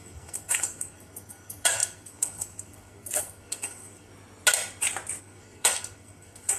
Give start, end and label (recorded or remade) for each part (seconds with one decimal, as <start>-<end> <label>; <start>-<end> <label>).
0.0-4.1 remade; 4.1-5.2 recorded; 5.2-6.6 remade